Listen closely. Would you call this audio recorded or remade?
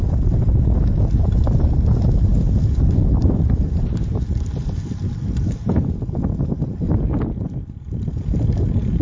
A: recorded